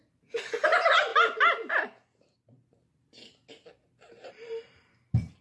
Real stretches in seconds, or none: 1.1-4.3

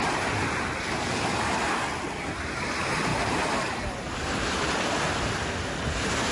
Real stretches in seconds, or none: 0.0-6.3

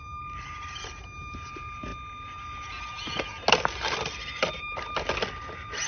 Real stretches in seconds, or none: 1.9-5.4

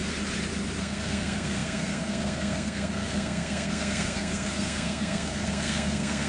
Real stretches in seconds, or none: 0.0-0.8

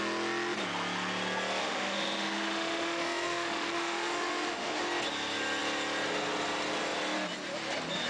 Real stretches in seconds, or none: 0.0-1.6; 4.8-8.1

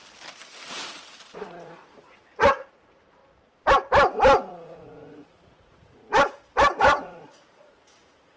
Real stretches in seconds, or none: 0.0-0.7; 3.2-4.5; 6.0-6.8

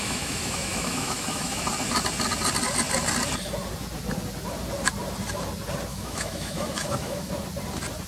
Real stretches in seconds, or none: 1.6-5.9; 7.3-8.1